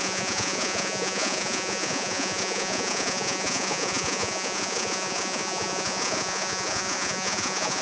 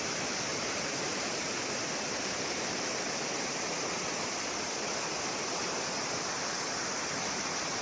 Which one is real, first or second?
second